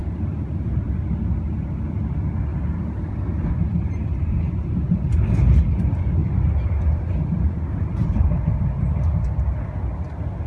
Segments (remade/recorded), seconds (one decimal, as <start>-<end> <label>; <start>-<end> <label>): 0.0-0.8 remade; 0.8-2.5 recorded; 2.5-3.1 remade; 3.1-6.2 recorded; 6.2-9.4 remade; 9.4-10.5 recorded